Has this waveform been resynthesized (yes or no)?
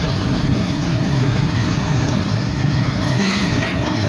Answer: yes